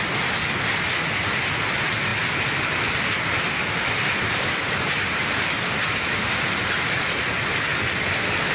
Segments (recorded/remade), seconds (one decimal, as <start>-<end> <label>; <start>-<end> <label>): 0.0-8.5 recorded